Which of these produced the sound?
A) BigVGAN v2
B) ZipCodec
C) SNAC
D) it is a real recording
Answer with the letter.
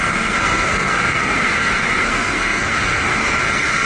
C